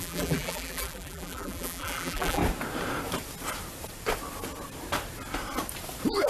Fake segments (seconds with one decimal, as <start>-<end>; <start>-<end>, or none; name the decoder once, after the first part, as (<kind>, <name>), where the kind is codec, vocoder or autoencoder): 0.0-2.4 (vocoder, BigVGAN v2)